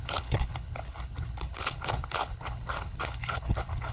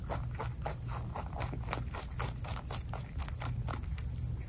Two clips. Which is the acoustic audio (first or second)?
second